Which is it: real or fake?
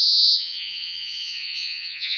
fake